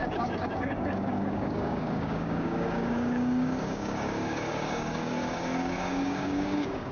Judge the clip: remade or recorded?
remade